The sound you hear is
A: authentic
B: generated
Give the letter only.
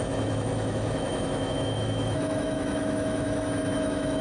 B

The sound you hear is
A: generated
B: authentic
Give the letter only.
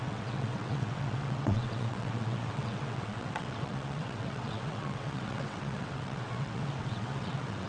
A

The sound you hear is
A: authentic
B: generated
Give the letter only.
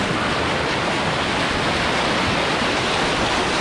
A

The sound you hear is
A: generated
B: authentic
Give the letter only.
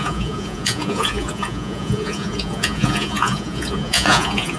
A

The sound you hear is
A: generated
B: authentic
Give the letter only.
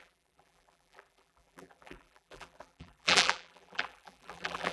A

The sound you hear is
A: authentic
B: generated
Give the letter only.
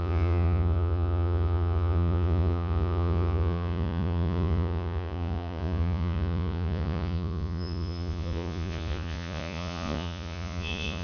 B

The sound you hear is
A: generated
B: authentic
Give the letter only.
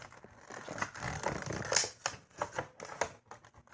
B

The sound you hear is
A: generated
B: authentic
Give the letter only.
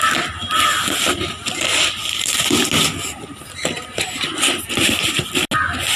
B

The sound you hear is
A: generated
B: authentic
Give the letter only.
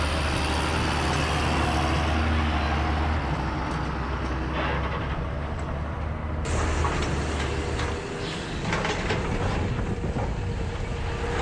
B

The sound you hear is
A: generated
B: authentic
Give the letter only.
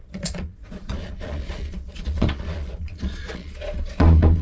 A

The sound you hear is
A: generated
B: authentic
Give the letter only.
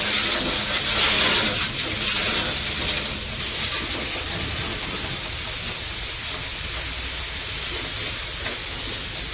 B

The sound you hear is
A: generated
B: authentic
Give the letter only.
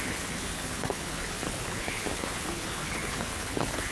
A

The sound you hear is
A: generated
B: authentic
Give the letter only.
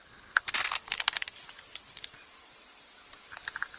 B